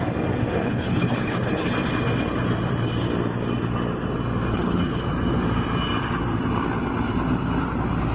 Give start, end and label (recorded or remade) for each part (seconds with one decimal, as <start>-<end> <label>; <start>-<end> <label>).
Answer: 0.0-0.5 recorded; 0.5-1.7 remade; 1.7-4.5 recorded; 4.5-5.0 remade; 5.0-8.1 recorded